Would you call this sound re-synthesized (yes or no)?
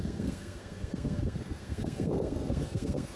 yes